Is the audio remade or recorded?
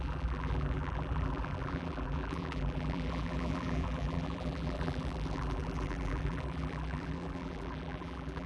remade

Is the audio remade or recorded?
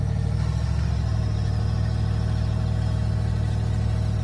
recorded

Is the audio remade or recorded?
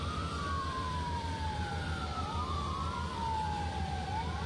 remade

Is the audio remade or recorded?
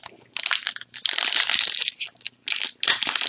recorded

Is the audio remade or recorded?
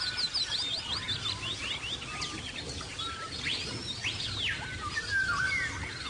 recorded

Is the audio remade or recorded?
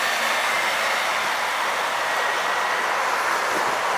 remade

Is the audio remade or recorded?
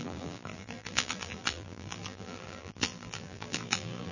remade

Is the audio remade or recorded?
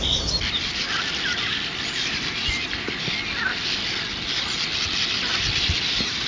recorded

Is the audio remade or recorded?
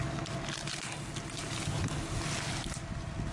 recorded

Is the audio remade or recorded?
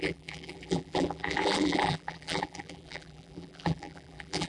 remade